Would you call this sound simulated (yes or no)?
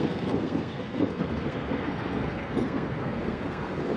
yes